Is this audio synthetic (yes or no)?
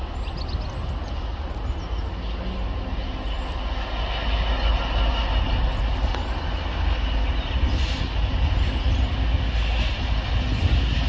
no